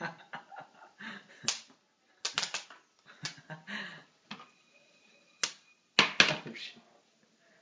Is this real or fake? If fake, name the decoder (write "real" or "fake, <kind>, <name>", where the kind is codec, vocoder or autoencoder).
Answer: real